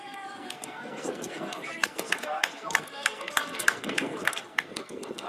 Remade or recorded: remade